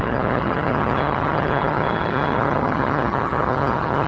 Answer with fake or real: fake